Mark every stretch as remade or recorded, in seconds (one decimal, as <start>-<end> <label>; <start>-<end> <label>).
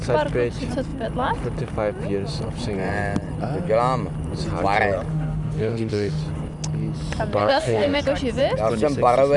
0.0-5.1 recorded; 5.1-6.2 remade; 6.2-7.4 recorded; 7.4-8.0 remade; 8.0-9.4 recorded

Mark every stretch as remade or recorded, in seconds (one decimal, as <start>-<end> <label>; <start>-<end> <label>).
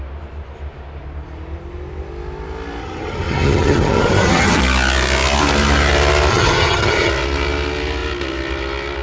0.0-2.8 recorded; 2.8-4.6 remade; 4.6-6.3 recorded; 6.3-7.1 remade; 7.1-9.0 recorded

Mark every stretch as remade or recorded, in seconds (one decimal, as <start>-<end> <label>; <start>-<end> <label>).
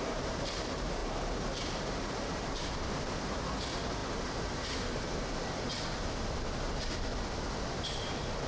0.0-7.1 remade; 7.1-7.9 recorded; 7.9-8.5 remade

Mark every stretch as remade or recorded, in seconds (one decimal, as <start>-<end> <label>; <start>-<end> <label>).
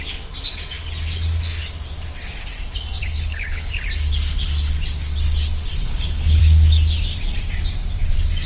0.0-3.0 recorded; 3.0-3.7 remade; 3.7-5.7 recorded; 5.7-6.4 remade; 6.4-8.5 recorded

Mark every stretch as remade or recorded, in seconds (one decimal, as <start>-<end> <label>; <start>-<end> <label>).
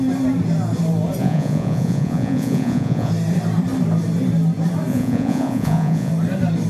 0.0-1.2 recorded; 1.2-3.1 remade; 3.1-4.9 recorded; 4.9-6.1 remade; 6.1-6.7 recorded